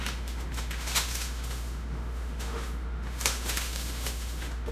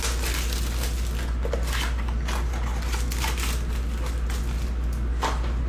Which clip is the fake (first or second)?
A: first